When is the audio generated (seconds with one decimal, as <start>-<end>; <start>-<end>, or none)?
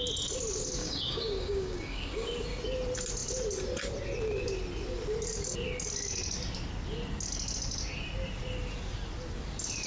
0.8-2.1